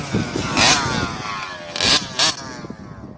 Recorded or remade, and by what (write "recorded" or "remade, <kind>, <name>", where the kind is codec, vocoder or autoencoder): recorded